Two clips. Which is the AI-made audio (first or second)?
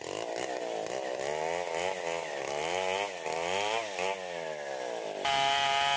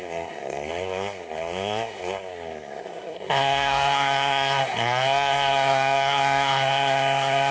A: second